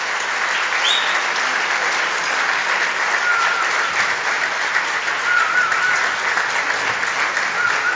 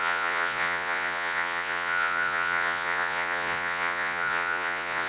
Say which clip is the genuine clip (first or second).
first